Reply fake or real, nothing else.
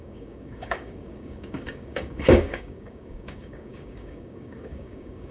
fake